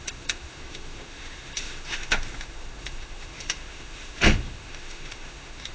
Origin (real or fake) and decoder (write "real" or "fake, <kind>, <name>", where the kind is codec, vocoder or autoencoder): fake, autoencoder, DAC-VAE